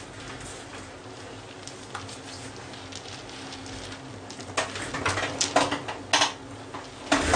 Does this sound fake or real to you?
real